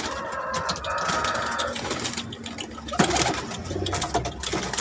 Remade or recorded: recorded